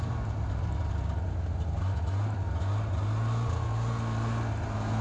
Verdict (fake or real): real